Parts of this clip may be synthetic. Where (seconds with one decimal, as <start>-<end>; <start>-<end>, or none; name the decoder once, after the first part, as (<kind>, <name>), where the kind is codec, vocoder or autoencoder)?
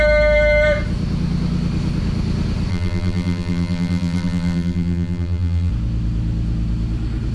2.7-5.7 (vocoder, BigVGAN v2)